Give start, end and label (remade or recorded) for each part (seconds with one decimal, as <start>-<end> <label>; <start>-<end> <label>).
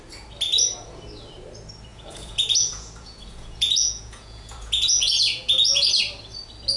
0.0-1.9 recorded; 1.9-6.0 remade; 6.0-6.8 recorded